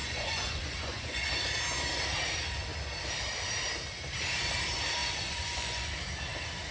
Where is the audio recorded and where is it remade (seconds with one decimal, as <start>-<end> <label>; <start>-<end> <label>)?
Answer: 0.0-1.3 remade; 1.3-5.0 recorded; 5.0-5.9 remade; 5.9-6.7 recorded